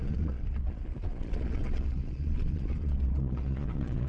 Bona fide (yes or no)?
no